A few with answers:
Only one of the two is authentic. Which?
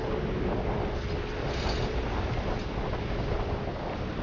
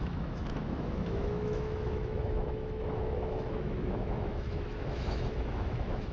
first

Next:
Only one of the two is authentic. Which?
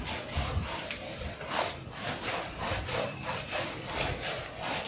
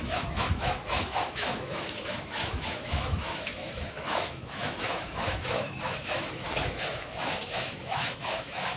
first